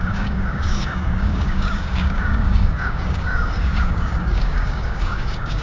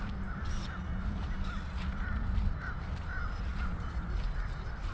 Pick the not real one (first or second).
first